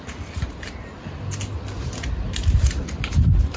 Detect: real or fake real